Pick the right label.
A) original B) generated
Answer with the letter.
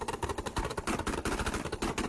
A